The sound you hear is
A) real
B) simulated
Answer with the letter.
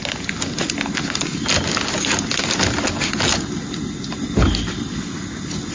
A